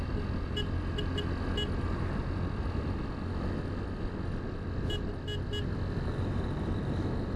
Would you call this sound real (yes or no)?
yes